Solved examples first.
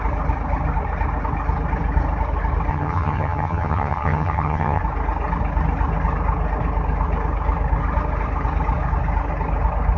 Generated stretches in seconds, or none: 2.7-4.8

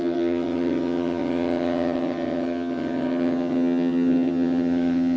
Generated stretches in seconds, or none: 0.0-5.2

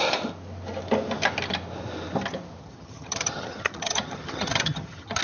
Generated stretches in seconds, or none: 2.6-5.2

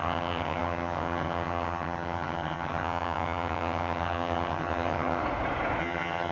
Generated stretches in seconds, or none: 0.0-5.2; 5.8-6.3

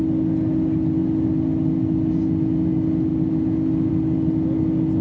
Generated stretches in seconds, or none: none